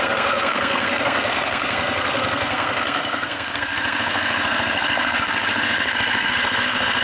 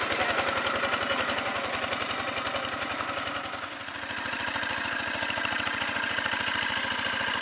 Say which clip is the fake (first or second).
first